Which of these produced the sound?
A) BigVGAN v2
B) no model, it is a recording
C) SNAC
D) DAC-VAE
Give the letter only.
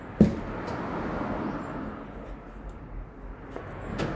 B